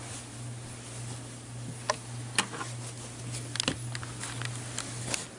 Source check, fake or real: real